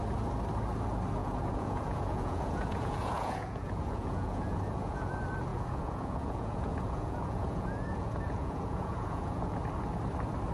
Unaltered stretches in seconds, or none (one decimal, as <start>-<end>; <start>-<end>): 0.0-1.2; 5.1-5.5; 9.6-10.5